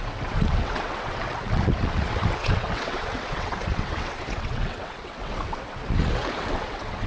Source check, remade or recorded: remade